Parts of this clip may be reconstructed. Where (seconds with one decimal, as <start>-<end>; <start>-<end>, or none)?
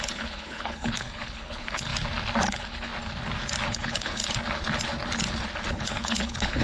0.0-1.9; 2.5-2.9; 3.7-4.2; 5.7-6.6